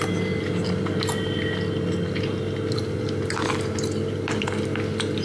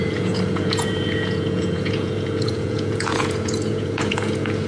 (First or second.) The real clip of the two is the first